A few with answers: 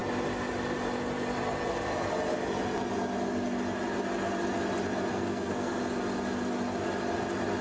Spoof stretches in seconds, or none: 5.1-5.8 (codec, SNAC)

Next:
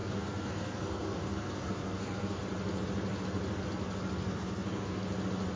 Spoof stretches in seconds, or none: 0.0-2.4 (codec, SNAC); 4.2-5.0

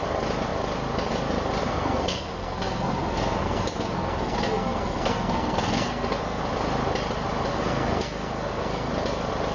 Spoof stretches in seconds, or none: 1.6-6.4 (codec, SNAC); 7.5-8.9

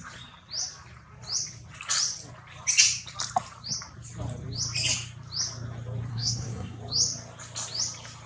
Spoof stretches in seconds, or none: 6.1-6.8 (codec, SNAC)

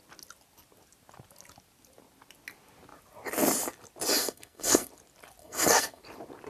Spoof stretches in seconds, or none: 4.2-4.9 (codec, SNAC); 5.4-6.0

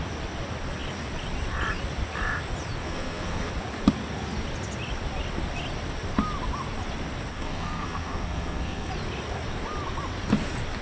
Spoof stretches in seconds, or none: 2.8-3.5 (codec, SNAC); 7.3-8.9

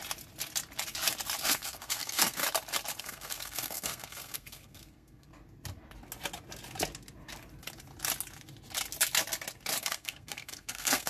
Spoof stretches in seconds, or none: 1.4-2.4 (codec, SNAC); 3.0-5.3; 9.8-11.1